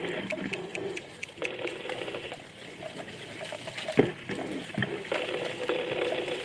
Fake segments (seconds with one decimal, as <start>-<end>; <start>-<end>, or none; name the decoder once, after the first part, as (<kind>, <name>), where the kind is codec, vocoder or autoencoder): 0.7-3.1 (vocoder, Vocos)